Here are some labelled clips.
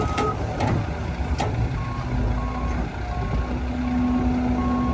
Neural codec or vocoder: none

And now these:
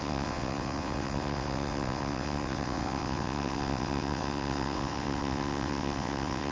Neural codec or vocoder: vocoder, WaveNeXt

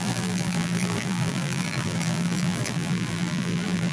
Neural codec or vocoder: vocoder, BigVGAN v2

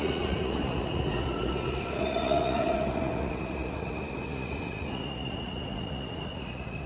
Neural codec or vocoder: vocoder, Vocos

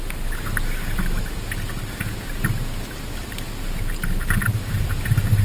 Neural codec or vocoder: none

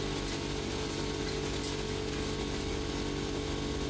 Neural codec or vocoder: none